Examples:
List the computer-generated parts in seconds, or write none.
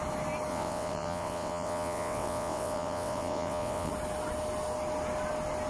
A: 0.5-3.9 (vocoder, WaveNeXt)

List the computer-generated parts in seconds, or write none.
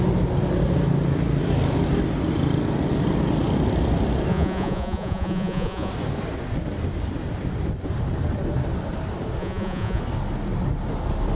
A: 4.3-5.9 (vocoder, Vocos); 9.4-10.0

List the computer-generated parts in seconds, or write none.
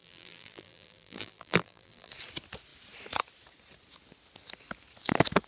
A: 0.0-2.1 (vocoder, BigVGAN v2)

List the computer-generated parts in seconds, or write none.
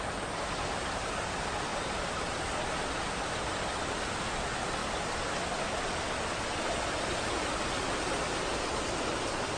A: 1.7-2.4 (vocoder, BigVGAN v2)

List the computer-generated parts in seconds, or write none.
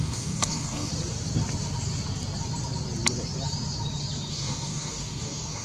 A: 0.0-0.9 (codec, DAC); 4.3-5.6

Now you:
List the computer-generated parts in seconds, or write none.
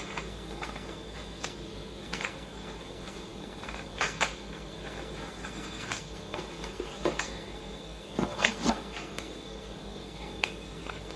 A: 0.0-11.2 (codec, SNAC)